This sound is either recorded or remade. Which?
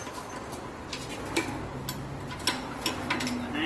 recorded